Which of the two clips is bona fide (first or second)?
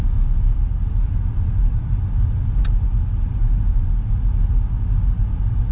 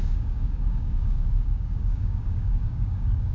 first